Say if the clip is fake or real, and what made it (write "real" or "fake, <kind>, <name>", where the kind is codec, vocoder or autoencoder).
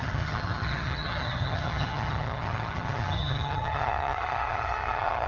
fake, vocoder, HiFi-GAN